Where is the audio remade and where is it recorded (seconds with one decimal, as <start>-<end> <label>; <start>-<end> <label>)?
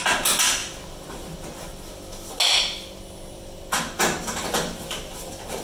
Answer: 0.0-5.6 recorded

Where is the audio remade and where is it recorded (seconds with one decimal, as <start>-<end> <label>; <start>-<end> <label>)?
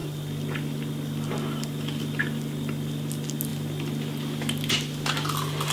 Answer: 0.0-5.7 recorded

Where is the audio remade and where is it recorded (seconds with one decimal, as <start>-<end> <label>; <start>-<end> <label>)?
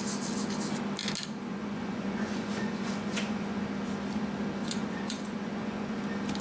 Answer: 0.0-1.5 recorded; 1.5-3.6 remade; 3.6-4.6 recorded; 4.6-6.0 remade; 6.0-6.4 recorded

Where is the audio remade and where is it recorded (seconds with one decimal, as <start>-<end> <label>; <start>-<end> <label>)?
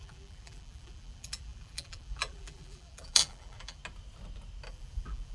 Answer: 0.0-3.8 remade; 3.8-4.7 recorded; 4.7-5.3 remade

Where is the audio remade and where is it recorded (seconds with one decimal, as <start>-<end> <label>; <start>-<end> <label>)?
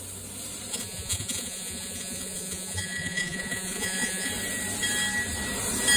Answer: 0.0-0.7 recorded; 0.7-4.3 remade; 4.3-6.0 recorded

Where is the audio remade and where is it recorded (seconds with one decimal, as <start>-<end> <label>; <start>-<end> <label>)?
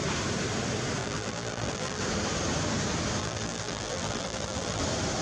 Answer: 0.0-1.0 recorded; 1.0-2.0 remade; 2.0-3.2 recorded; 3.2-4.8 remade; 4.8-5.2 recorded